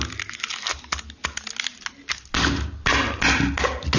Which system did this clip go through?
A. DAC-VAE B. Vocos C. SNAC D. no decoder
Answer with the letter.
D